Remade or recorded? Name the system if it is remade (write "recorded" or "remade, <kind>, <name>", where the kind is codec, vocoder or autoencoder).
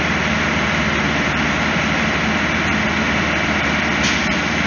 remade, vocoder, BigVGAN v2